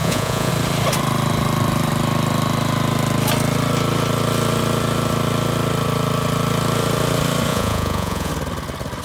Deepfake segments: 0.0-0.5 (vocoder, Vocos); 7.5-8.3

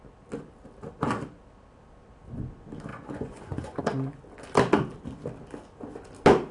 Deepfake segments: 2.9-3.8 (vocoder, Vocos)

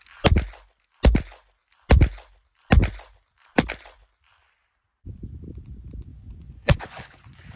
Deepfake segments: 6.1-7.6 (vocoder, Vocos)

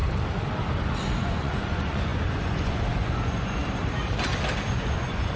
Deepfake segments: 1.1-3.6 (vocoder, Vocos); 4.7-5.4

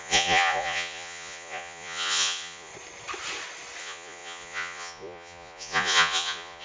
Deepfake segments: 0.0-2.7 (vocoder, Vocos); 3.8-6.6

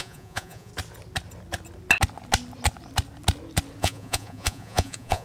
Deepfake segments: 0.0-0.7 (vocoder, Vocos); 3.8-5.2